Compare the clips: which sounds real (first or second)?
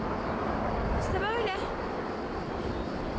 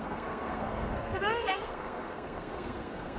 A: first